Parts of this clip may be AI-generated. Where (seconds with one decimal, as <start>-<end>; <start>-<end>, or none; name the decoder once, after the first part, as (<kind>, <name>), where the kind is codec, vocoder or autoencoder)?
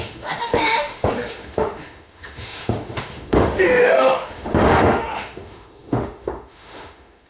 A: 0.0-7.3 (autoencoder, DAC-VAE)